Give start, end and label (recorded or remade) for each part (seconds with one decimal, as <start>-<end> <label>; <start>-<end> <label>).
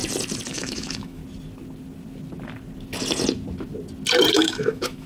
0.0-0.5 recorded; 0.5-1.2 remade; 1.2-4.3 recorded; 4.3-5.1 remade